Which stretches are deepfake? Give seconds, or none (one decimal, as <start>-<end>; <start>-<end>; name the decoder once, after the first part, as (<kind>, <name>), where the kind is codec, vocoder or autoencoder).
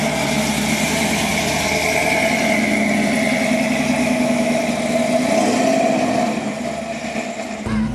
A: 4.0-4.6 (autoencoder, DAC-VAE)